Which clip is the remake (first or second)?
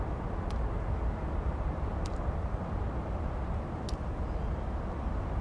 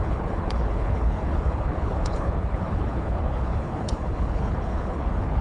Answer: second